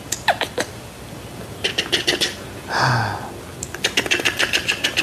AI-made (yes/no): no